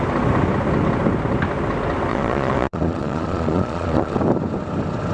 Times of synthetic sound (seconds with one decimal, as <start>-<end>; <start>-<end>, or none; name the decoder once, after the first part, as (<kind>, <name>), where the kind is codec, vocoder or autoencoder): 2.1-4.2 (vocoder, Vocos)